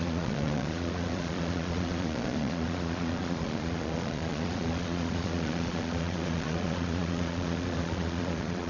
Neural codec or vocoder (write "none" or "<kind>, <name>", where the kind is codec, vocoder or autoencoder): vocoder, Vocos